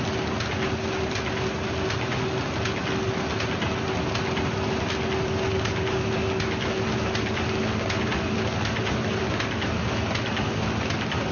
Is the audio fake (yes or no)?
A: no